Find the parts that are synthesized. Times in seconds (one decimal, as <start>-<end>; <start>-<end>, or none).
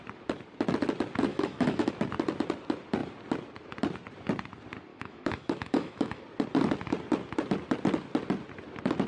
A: 1.3-1.9; 4.9-6.2